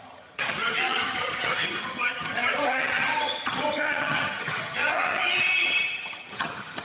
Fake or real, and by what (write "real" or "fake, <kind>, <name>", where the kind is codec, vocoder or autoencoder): fake, vocoder, HiFi-GAN